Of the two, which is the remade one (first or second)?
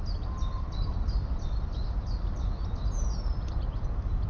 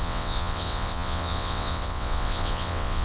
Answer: second